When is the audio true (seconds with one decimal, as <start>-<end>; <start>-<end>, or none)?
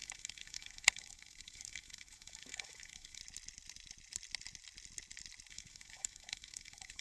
3.2-5.5